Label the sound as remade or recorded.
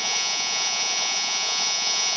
remade